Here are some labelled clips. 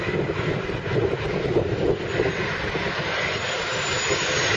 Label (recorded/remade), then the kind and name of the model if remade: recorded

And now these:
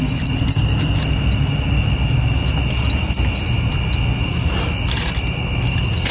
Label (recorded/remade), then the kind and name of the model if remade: recorded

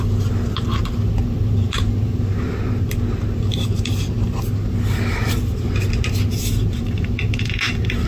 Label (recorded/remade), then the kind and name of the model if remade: remade, vocoder, BigVGAN v2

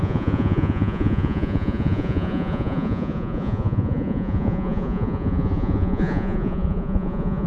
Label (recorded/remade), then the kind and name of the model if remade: remade, vocoder, Vocos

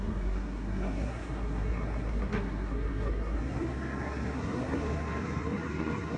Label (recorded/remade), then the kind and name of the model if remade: remade, codec, SNAC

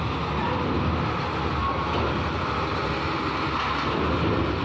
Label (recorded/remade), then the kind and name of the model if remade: recorded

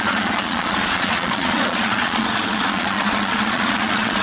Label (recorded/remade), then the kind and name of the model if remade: remade, vocoder, Vocos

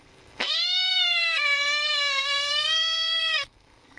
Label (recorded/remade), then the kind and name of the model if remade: remade, codec, SNAC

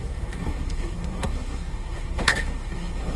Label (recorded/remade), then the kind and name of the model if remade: remade, codec, SNAC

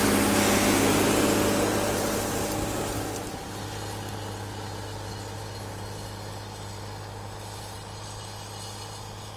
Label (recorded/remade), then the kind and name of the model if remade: recorded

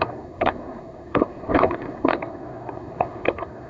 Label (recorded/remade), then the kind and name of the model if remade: remade, codec, SNAC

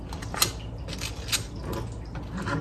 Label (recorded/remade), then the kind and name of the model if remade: recorded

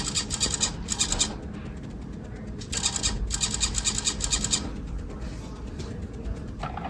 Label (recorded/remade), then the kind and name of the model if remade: recorded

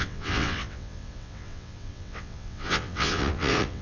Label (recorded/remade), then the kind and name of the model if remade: remade, vocoder, WaveNeXt